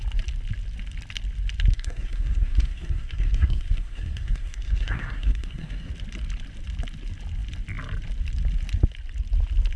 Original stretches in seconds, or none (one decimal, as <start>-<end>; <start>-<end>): 0.0-1.7; 5.9-9.8